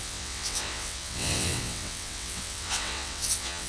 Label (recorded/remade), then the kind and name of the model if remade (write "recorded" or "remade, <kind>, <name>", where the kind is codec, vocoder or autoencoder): remade, vocoder, WaveNeXt